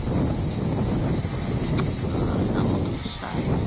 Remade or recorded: recorded